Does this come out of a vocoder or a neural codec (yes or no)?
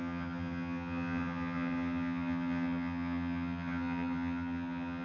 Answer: yes